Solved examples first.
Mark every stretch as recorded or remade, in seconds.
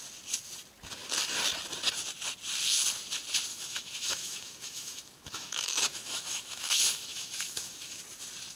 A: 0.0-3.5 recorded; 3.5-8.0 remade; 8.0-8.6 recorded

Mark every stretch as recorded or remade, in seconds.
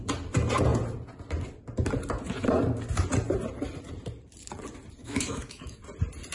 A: 0.0-5.0 recorded; 5.0-5.8 remade; 5.8-6.3 recorded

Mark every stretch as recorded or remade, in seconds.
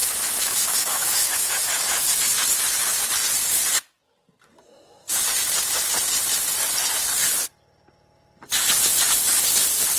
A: 0.0-2.0 remade; 2.0-10.0 recorded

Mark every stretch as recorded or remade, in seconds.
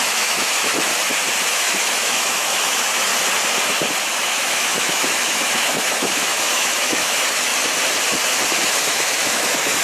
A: 0.0-0.9 remade; 0.9-1.5 recorded; 1.5-3.1 remade; 3.1-4.0 recorded; 4.0-7.5 remade; 7.5-8.9 recorded; 8.9-9.8 remade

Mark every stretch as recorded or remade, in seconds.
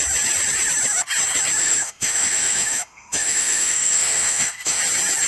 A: 0.0-1.6 recorded; 1.6-4.8 remade; 4.8-5.3 recorded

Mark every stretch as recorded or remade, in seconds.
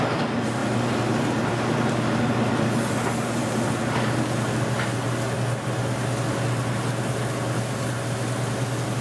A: 0.0-9.0 recorded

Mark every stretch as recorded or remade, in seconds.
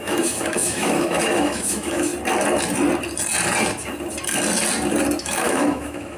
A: 0.0-2.1 remade; 2.1-5.2 recorded; 5.2-6.2 remade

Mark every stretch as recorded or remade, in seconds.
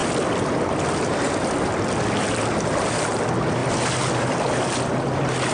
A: 0.0-5.5 recorded